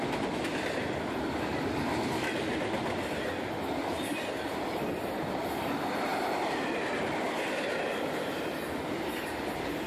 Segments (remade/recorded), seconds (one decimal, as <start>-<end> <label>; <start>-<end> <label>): 0.0-9.9 recorded